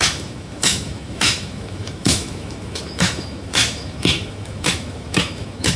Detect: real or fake fake